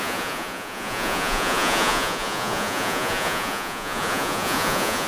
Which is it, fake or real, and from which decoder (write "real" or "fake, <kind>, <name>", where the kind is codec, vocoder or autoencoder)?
fake, vocoder, Vocos